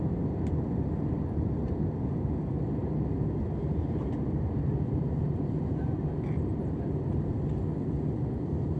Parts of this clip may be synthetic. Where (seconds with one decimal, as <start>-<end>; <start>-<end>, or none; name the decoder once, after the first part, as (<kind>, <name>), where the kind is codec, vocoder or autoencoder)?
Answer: 2.8-5.8 (vocoder, BigVGAN v2)